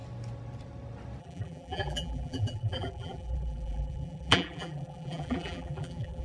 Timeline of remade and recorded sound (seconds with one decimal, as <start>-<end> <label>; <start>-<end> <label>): 0.0-1.2 recorded; 1.2-6.2 remade